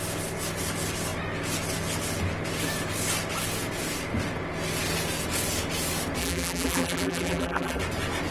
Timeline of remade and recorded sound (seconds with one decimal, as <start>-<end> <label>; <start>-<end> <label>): 0.0-6.2 recorded; 6.2-7.8 remade; 7.8-8.3 recorded